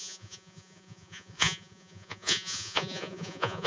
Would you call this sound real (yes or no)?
no